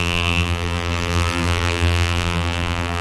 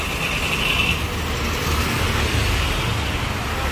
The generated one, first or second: first